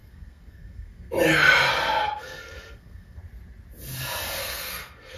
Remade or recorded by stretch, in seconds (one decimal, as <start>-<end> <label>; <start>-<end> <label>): 0.0-1.1 remade; 1.1-1.7 recorded; 1.7-3.2 remade; 3.2-4.4 recorded; 4.4-5.2 remade